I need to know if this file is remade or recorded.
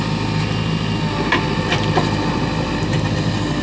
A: recorded